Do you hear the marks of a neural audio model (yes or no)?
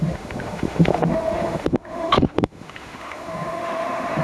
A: yes